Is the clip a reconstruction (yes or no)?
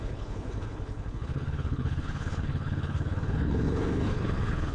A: yes